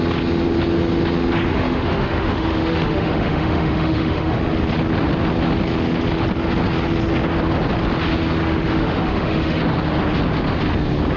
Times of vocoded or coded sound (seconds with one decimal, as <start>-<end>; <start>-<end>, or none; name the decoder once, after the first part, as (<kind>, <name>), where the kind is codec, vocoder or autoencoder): 1.5-4.4 (autoencoder, DAC-VAE); 8.4-9.6